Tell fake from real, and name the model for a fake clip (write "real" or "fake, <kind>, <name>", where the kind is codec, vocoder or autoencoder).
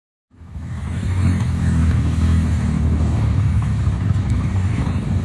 fake, codec, DAC